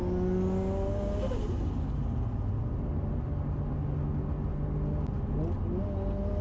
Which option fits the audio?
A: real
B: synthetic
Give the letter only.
A